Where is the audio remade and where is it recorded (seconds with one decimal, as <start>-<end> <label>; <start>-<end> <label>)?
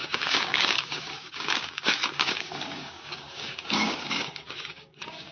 0.0-5.3 remade